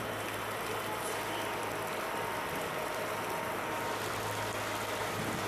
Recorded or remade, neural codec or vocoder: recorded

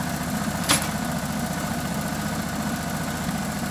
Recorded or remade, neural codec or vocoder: recorded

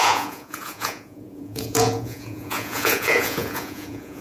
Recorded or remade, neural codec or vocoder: remade, vocoder, Vocos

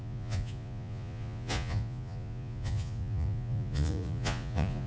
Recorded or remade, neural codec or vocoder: remade, vocoder, Vocos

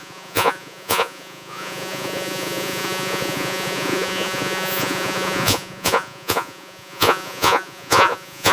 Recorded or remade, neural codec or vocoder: remade, vocoder, Vocos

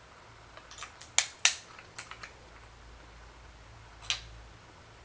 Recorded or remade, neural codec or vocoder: recorded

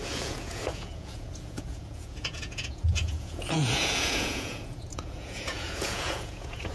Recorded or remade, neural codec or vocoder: remade, vocoder, Vocos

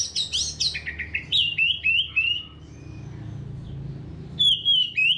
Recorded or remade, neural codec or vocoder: recorded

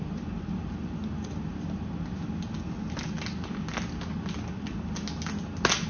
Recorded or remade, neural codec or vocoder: recorded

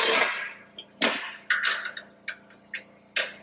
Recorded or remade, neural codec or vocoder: recorded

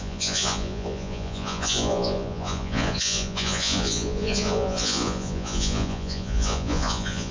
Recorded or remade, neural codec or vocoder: remade, vocoder, Vocos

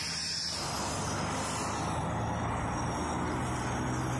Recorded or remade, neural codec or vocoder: recorded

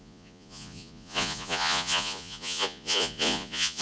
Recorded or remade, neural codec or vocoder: remade, vocoder, Vocos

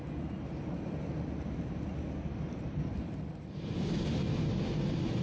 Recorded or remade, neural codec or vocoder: recorded